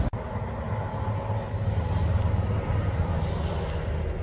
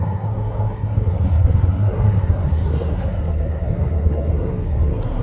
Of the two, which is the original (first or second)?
first